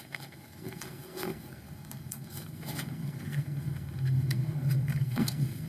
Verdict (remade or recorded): remade